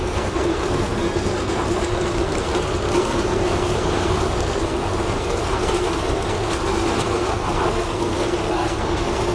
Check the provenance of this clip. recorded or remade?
remade